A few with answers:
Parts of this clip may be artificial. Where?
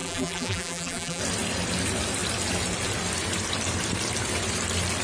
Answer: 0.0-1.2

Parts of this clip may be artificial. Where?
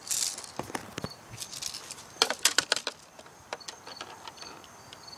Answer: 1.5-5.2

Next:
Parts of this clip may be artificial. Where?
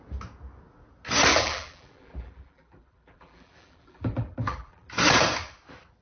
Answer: 1.3-4.9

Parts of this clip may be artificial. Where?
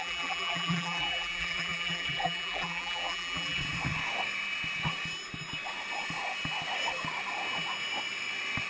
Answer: 0.0-3.6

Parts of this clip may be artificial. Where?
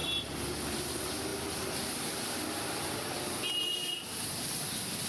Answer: 0.0-0.7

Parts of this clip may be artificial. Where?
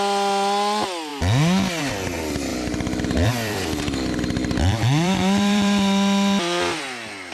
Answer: 2.5-6.8